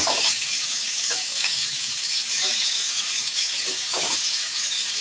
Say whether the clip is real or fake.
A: fake